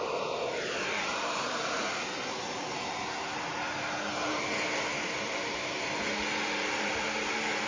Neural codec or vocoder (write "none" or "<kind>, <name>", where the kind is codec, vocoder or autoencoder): none